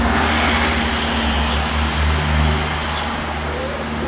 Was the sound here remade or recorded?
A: recorded